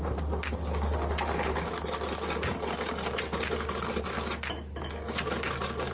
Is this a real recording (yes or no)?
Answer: yes